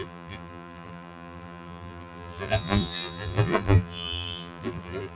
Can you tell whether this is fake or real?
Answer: fake